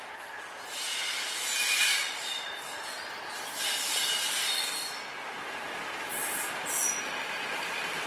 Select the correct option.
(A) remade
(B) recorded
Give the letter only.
B